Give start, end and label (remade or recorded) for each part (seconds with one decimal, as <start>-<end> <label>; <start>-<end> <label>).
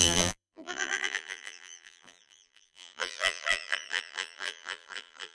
0.0-5.3 remade